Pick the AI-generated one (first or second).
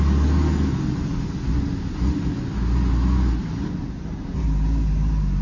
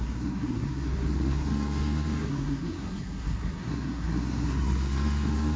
second